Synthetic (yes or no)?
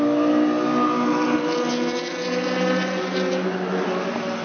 no